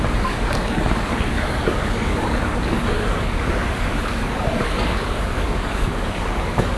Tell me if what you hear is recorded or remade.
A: remade